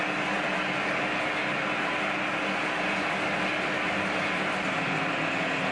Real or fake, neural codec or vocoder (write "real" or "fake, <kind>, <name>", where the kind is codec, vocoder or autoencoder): real